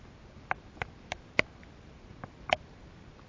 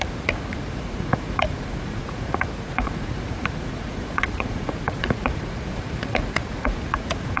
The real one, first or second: first